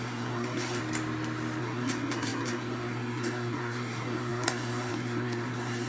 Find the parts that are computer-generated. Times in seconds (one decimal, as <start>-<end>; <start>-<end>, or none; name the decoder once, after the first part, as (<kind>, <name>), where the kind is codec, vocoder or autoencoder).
0.0-0.8 (codec, SNAC); 1.6-5.9